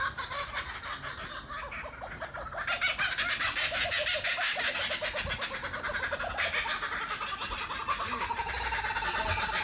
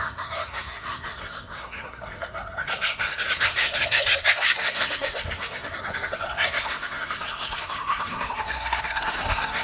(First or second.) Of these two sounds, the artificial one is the second